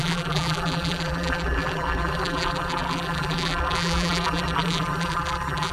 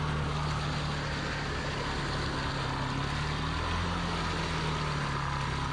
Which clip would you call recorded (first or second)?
second